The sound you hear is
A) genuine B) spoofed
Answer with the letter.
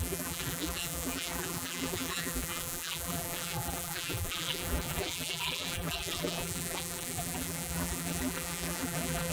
B